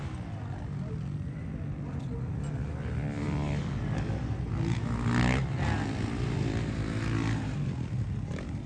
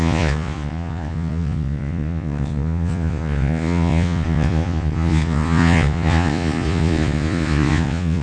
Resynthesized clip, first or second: second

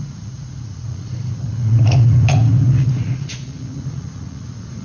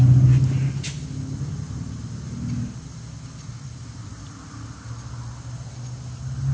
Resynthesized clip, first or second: first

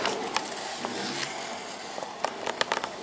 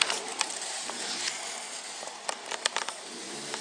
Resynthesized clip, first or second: second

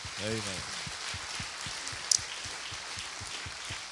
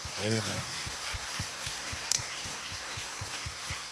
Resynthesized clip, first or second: second